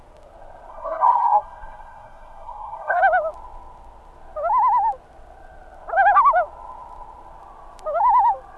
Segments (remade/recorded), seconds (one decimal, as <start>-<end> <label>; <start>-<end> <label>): 0.0-0.7 recorded; 0.7-3.0 remade; 3.0-8.6 recorded